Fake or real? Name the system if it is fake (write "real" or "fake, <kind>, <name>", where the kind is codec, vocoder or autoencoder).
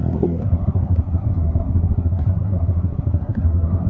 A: fake, codec, SNAC